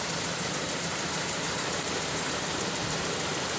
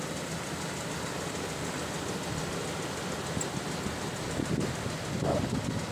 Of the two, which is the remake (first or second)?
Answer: first